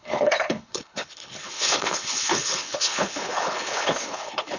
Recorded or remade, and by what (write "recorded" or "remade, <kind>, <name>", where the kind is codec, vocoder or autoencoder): remade, codec, HILCodec